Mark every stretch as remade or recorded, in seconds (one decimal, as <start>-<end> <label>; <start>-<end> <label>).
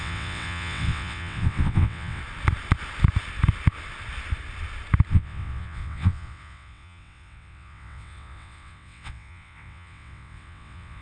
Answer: 0.0-2.2 remade; 2.2-5.1 recorded; 5.1-11.0 remade